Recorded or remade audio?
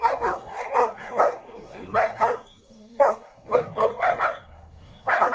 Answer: remade